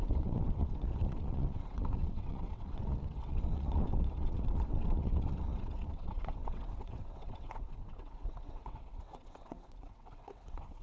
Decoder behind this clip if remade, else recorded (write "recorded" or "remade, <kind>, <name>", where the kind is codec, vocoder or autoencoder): remade, vocoder, WaveNeXt